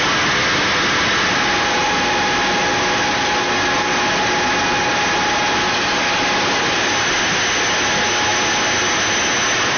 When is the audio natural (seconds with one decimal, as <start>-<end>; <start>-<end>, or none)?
0.0-9.8